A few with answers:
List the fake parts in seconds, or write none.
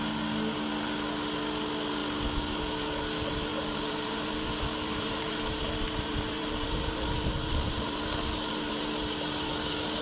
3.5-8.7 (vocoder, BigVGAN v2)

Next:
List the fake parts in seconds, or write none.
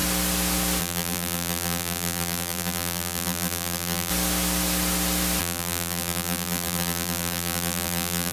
0.8-4.1 (vocoder, BigVGAN v2); 5.4-8.3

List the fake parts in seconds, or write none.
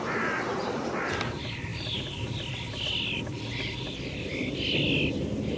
0.0-5.6 (vocoder, BigVGAN v2)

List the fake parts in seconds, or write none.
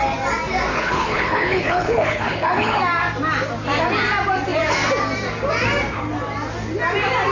0.7-2.8 (codec, HILCodec)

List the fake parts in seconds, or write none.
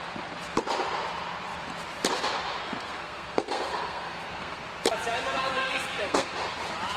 2.6-4.6 (codec, SNAC); 5.4-6.3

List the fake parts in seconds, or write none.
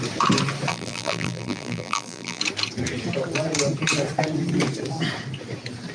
0.7-2.4 (vocoder, BigVGAN v2)